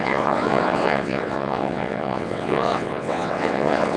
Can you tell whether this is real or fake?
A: fake